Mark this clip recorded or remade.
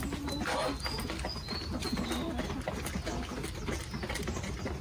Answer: recorded